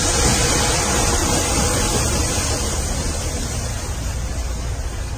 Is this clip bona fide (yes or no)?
yes